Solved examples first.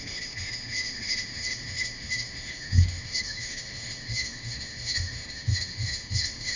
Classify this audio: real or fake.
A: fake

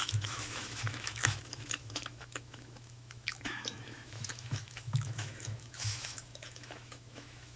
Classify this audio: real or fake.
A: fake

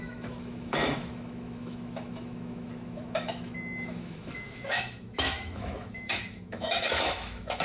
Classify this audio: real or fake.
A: fake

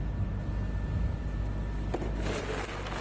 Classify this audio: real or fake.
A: real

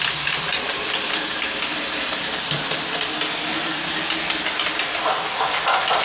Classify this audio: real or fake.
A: real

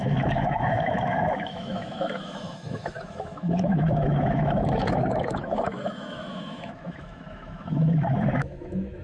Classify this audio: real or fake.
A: fake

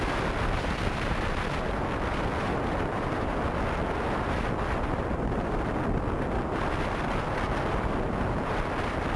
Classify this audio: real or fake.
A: real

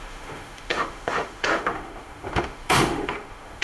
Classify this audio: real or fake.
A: fake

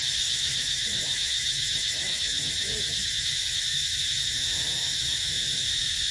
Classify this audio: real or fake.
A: fake